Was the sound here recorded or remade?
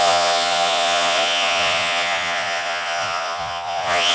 remade